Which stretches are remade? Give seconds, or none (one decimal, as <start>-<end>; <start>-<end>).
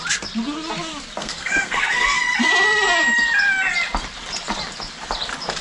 1.2-2.2